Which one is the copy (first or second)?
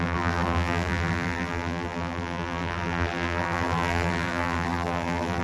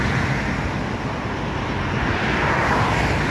first